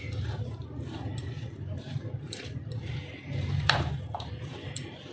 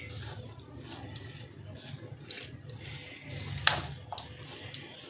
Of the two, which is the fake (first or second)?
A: first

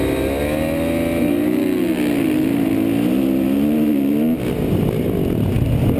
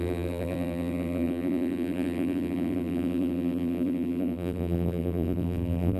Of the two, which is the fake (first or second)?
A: second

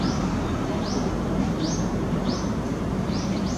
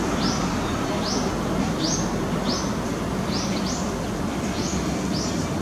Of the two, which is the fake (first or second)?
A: first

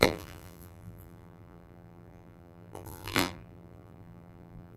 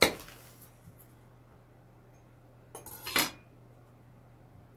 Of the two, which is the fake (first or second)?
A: first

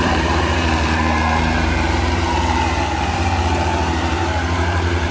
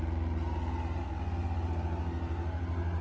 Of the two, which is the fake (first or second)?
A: first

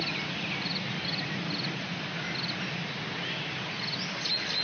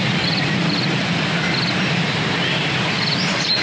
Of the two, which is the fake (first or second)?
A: second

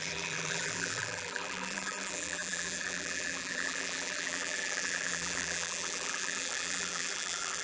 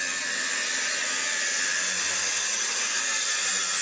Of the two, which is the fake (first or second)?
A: first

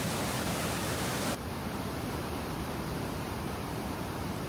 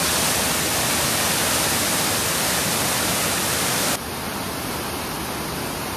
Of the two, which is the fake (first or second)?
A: first